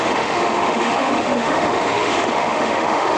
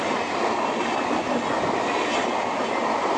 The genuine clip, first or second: second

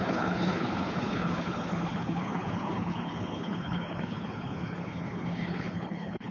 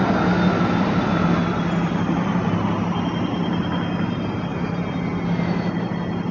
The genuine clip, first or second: second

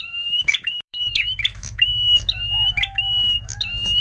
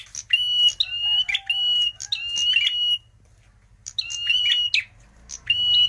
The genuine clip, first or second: second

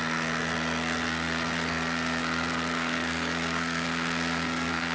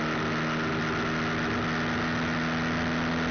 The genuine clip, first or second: second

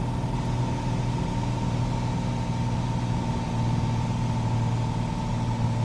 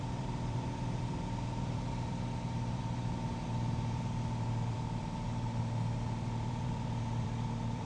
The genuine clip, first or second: first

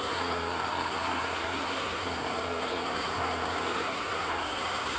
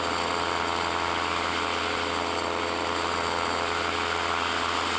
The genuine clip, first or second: second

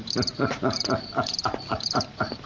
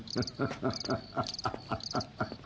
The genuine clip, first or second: second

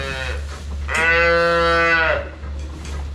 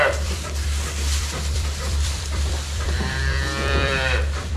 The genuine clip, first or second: first